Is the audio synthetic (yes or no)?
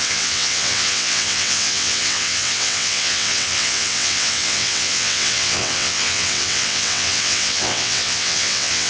yes